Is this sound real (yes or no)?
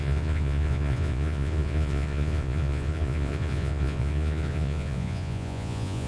no